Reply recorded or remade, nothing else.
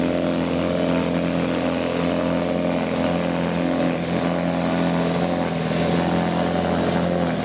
recorded